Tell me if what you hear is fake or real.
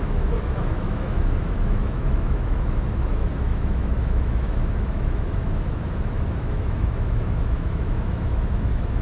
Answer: fake